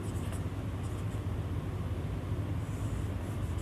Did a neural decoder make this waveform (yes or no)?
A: no